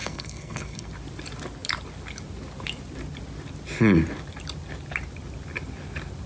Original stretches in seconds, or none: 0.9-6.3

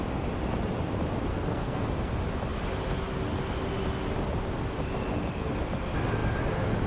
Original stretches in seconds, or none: 0.0-1.3; 2.1-6.9

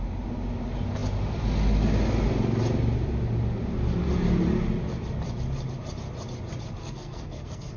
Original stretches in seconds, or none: 0.0-6.8

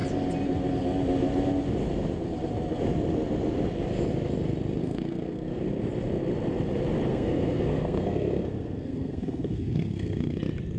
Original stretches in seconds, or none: 0.0-4.8; 5.6-7.1; 10.4-10.8

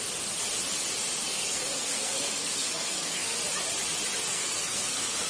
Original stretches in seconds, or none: 0.0-1.2; 3.4-4.3